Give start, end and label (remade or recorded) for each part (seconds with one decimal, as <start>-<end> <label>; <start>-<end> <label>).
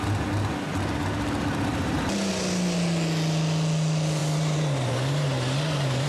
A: 0.0-1.7 recorded; 1.7-2.3 remade; 2.3-4.2 recorded; 4.2-6.1 remade